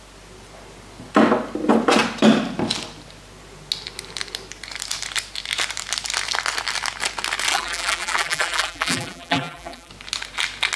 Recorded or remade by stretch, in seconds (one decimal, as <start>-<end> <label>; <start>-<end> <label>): 0.0-7.5 recorded; 7.5-9.9 remade; 9.9-10.8 recorded